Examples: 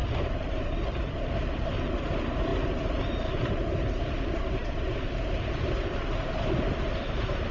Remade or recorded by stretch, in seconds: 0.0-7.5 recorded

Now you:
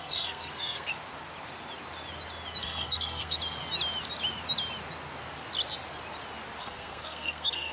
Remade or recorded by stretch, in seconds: 0.0-0.9 remade; 0.9-2.6 recorded; 2.6-3.4 remade; 3.4-6.6 recorded; 6.6-7.7 remade

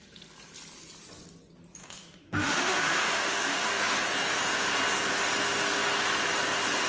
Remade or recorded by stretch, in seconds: 0.0-1.8 recorded; 1.8-3.8 remade; 3.8-6.9 recorded

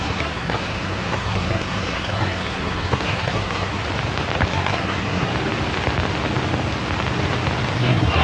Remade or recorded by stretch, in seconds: 0.0-3.8 remade; 3.8-4.5 recorded; 4.5-5.3 remade; 5.3-7.7 recorded; 7.7-8.2 remade